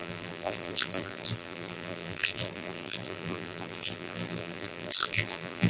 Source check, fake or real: fake